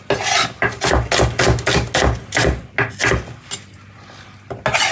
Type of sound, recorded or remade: recorded